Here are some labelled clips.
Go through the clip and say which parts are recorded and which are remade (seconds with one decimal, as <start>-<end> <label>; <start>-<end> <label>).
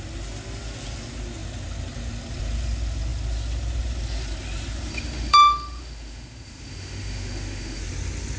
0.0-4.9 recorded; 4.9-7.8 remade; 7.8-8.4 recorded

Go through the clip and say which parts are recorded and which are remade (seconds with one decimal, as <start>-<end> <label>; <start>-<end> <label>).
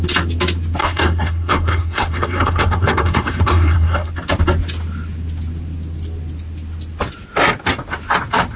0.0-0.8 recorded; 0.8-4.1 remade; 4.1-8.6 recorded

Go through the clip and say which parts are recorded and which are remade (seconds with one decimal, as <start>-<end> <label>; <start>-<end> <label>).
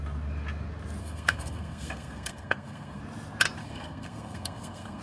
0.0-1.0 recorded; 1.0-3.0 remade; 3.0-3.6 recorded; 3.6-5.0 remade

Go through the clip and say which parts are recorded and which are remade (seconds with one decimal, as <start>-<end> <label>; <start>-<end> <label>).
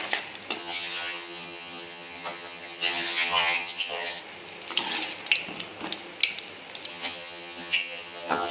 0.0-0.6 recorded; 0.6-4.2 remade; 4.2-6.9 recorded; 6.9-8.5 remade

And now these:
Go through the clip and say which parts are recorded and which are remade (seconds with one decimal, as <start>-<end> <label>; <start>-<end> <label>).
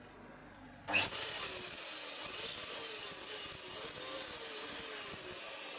0.0-0.4 recorded; 0.4-1.4 remade; 1.4-5.8 recorded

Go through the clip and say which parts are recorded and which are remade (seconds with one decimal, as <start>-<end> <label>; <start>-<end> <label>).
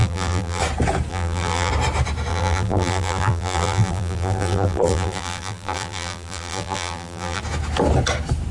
0.0-0.6 remade; 0.6-1.1 recorded; 1.1-1.7 remade; 1.7-2.3 recorded; 2.3-7.4 remade; 7.4-8.5 recorded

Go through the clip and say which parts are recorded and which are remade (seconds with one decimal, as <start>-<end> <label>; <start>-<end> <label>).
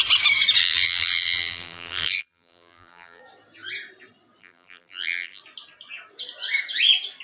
0.0-0.6 recorded; 0.6-3.2 remade; 3.2-4.4 recorded; 4.4-5.4 remade; 5.4-7.2 recorded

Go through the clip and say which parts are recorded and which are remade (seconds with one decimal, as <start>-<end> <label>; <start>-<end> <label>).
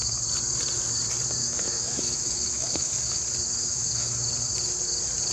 0.0-1.4 recorded; 1.4-3.2 remade; 3.2-3.6 recorded; 3.6-4.2 remade; 4.2-5.3 recorded